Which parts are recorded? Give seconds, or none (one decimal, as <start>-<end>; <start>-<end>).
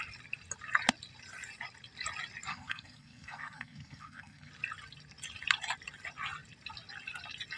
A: 0.0-2.5; 4.5-7.6